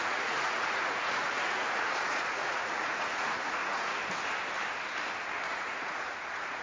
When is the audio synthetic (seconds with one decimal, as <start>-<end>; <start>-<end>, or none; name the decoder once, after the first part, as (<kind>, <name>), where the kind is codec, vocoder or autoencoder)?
0.0-4.0 (vocoder, Vocos); 5.5-6.6